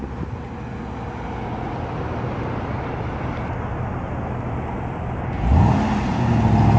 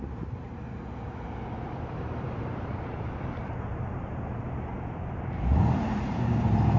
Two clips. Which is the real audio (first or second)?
first